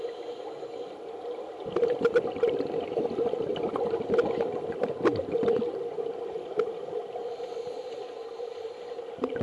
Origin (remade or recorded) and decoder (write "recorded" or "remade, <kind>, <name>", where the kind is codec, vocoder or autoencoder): recorded